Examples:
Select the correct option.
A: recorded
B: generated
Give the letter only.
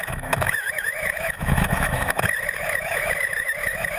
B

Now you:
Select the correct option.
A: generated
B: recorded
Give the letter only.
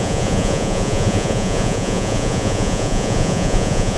A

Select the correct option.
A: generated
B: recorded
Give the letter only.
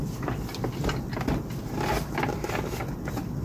B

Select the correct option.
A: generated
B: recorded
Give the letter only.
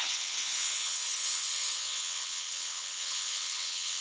A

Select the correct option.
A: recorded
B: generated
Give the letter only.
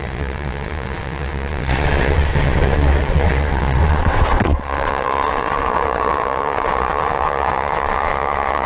B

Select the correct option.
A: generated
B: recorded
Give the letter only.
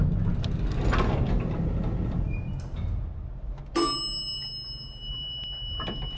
B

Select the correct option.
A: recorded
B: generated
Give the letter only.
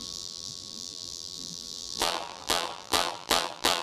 B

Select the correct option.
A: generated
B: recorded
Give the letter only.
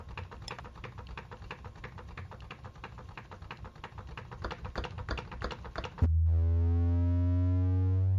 B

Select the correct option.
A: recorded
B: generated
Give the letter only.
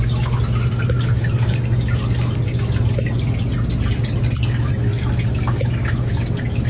A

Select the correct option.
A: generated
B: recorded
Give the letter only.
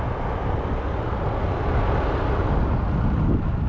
B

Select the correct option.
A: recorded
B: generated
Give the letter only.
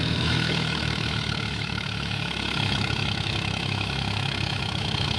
B